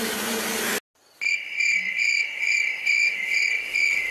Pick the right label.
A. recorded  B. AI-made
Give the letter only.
A